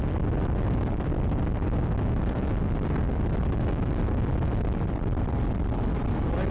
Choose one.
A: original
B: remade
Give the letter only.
B